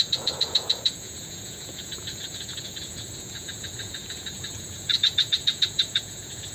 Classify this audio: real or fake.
fake